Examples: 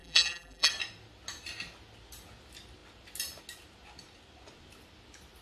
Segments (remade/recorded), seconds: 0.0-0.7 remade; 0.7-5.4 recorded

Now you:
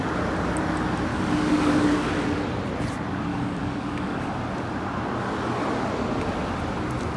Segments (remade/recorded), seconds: 0.0-1.1 recorded; 1.1-2.4 remade; 2.4-3.3 recorded; 3.3-4.3 remade; 4.3-7.2 recorded

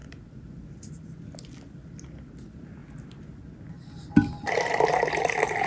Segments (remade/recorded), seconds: 0.0-5.7 recorded

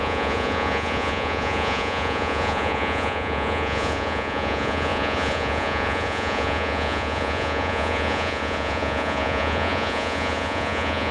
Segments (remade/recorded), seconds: 0.0-11.1 remade

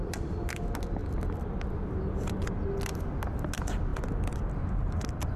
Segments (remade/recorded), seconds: 0.0-0.6 remade; 0.6-1.0 recorded; 1.0-2.5 remade; 2.5-3.9 recorded; 3.9-4.5 remade; 4.5-5.4 recorded

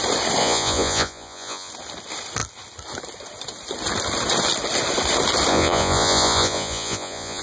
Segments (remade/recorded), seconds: 0.0-0.4 recorded; 0.4-1.7 remade; 1.7-5.5 recorded; 5.5-7.4 remade

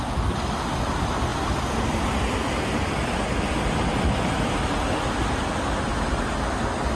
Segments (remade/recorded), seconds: 0.0-1.3 recorded; 1.3-2.6 remade; 2.6-7.0 recorded